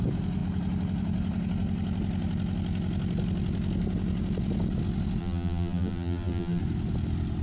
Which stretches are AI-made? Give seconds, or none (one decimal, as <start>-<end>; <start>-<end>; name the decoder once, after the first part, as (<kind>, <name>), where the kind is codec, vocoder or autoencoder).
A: 5.2-6.6 (vocoder, BigVGAN v2)